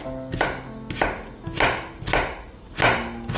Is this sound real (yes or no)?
yes